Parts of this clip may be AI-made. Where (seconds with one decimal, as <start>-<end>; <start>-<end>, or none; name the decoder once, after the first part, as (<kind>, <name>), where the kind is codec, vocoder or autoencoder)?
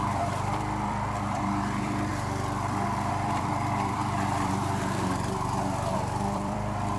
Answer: 0.0-2.1 (vocoder, BigVGAN v2); 3.1-7.0